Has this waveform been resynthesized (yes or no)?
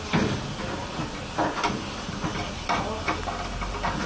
no